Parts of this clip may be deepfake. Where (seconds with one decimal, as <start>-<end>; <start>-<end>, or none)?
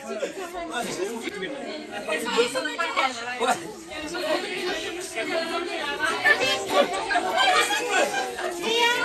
0.5-3.4; 4.0-8.5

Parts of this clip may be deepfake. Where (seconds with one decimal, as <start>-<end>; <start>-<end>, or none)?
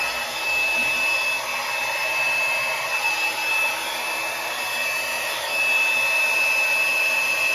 5.1-5.6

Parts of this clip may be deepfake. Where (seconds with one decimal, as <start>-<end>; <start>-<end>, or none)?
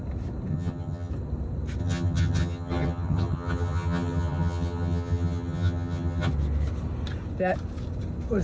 0.5-1.1; 1.8-6.3